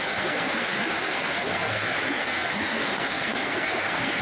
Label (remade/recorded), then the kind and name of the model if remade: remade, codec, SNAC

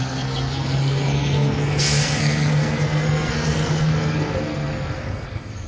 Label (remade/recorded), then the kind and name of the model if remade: remade, codec, SNAC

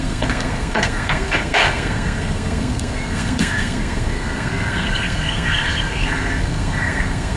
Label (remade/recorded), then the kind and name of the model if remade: remade, codec, SNAC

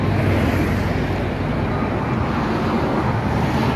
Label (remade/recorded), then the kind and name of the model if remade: recorded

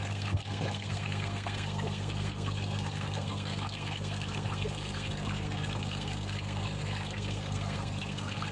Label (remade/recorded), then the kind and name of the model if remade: remade, codec, SNAC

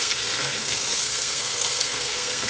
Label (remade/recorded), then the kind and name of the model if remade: remade, codec, SNAC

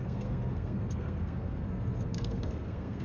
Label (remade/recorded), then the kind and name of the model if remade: remade, codec, SNAC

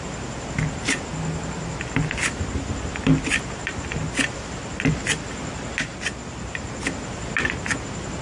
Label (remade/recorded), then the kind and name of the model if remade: recorded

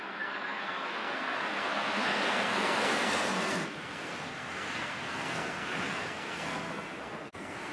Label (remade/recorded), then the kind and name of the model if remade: remade, codec, SNAC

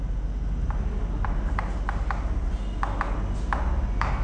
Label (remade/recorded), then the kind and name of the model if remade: recorded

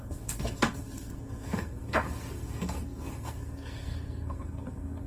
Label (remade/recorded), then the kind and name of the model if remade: remade, codec, SNAC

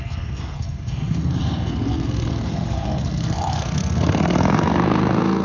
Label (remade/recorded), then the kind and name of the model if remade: remade, codec, SNAC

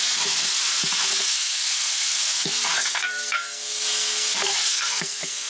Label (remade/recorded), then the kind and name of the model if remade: remade, codec, SNAC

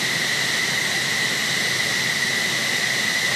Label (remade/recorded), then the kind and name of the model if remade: recorded